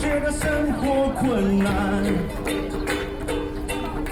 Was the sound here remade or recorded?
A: recorded